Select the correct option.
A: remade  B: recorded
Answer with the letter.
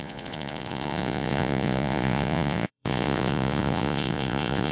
A